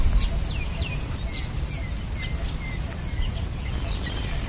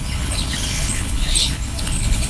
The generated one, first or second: second